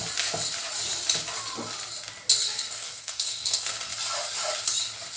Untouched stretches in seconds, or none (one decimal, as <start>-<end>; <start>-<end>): 0.0-2.4; 3.9-5.2